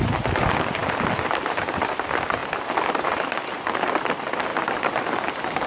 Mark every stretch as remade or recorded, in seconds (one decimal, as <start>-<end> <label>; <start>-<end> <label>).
0.0-5.7 recorded